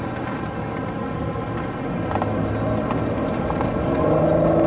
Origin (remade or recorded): recorded